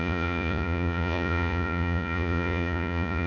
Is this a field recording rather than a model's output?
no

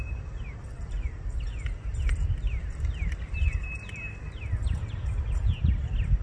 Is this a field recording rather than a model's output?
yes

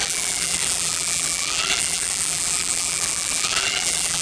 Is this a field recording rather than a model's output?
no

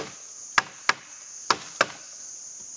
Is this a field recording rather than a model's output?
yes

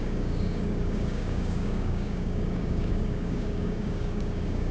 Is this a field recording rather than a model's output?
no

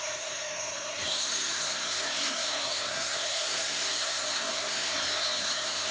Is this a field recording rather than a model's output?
no